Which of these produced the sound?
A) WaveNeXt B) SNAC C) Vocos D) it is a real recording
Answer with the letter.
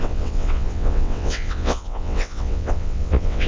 A